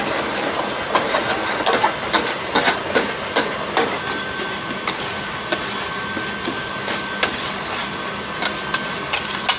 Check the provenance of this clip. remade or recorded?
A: recorded